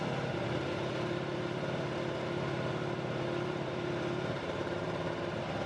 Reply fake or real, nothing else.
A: fake